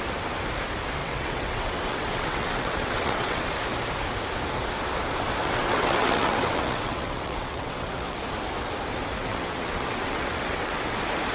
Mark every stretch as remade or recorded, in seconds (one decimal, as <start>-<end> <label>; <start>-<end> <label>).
0.0-1.0 recorded; 1.0-3.5 remade; 3.5-5.4 recorded; 5.4-8.2 remade; 8.2-9.2 recorded; 9.2-10.8 remade; 10.8-11.3 recorded